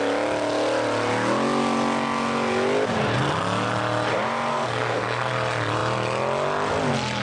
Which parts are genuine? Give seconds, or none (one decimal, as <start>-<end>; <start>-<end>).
0.0-4.5; 5.3-7.2